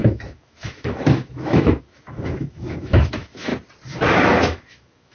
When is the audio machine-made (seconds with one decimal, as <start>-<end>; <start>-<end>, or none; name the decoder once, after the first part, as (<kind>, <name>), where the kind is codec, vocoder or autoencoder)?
0.0-3.5 (autoencoder, DAC-VAE); 4.4-5.1